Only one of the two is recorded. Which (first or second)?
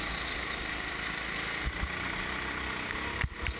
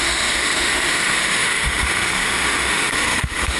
first